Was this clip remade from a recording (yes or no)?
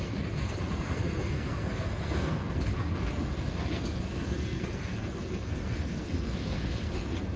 yes